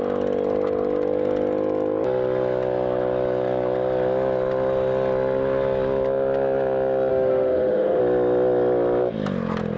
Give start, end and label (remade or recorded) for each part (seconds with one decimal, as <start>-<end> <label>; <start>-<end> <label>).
0.0-7.1 recorded; 7.1-8.0 remade; 8.0-9.8 recorded